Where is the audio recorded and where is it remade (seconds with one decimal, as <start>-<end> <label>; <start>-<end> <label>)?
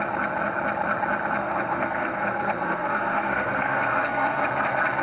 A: 0.0-1.4 recorded; 1.4-4.4 remade; 4.4-5.0 recorded